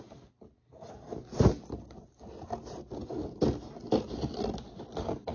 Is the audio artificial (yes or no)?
no